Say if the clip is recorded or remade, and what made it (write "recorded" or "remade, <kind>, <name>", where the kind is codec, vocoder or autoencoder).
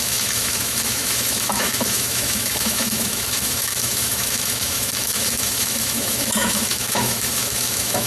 remade, autoencoder, DAC-VAE